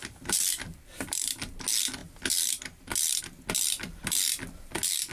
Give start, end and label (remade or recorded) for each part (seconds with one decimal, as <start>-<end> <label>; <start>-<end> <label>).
0.0-1.5 remade; 1.5-5.1 recorded